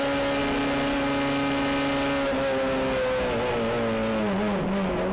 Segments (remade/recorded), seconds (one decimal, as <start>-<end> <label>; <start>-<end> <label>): 0.0-5.1 recorded

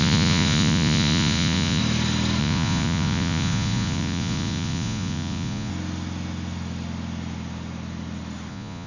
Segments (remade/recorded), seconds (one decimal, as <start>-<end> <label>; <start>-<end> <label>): 0.0-1.8 remade; 1.8-2.4 recorded; 2.4-5.7 remade; 5.7-8.5 recorded; 8.5-8.9 remade

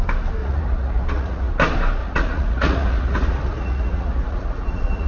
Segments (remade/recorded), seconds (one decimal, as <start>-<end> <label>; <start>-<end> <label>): 0.0-0.4 recorded; 0.4-1.5 remade; 1.5-2.0 recorded; 2.0-5.1 remade